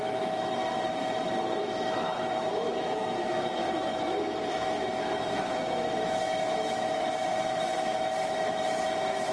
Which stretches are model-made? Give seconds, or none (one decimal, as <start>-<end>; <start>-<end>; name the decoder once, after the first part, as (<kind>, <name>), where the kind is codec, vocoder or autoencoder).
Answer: 0.0-0.6 (autoencoder, DAC-VAE); 1.6-9.3